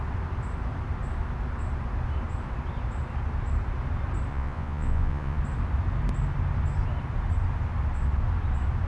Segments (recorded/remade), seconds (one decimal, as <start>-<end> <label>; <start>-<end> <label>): 0.0-4.3 recorded; 4.3-5.4 remade; 5.4-8.9 recorded